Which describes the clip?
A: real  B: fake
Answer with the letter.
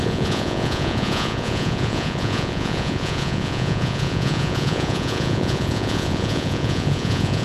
B